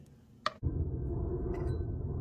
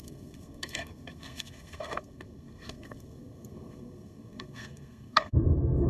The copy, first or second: second